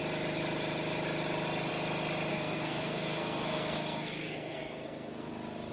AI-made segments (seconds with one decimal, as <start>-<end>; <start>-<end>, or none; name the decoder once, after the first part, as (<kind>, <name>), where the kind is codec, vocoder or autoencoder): 2.3-5.3 (codec, SNAC)